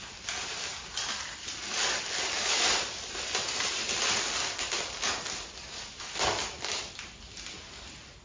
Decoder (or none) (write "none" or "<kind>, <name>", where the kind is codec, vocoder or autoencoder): none